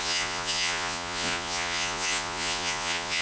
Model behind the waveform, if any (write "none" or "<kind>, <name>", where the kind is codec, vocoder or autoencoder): vocoder, Vocos